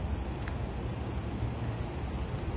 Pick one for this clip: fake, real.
real